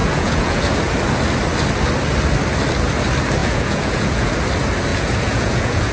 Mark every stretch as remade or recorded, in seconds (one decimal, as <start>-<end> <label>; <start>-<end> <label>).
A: 0.0-0.6 remade; 0.6-3.4 recorded; 3.4-4.3 remade; 4.3-4.9 recorded; 4.9-5.9 remade